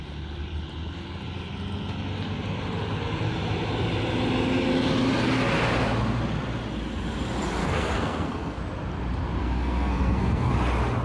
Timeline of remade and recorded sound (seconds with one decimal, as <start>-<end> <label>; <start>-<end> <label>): 0.0-7.6 recorded; 7.6-8.6 remade; 8.6-9.4 recorded; 9.4-10.5 remade; 10.5-11.0 recorded